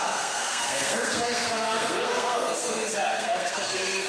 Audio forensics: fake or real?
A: fake